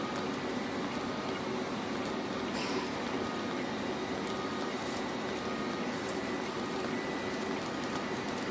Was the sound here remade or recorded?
recorded